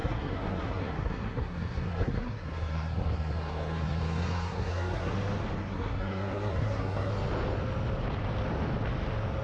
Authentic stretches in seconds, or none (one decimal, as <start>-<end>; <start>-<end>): 5.1-5.6; 7.1-9.4